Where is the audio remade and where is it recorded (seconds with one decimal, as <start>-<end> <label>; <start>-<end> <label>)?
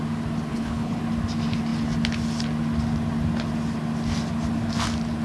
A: 0.0-0.5 recorded; 0.5-1.0 remade; 1.0-5.2 recorded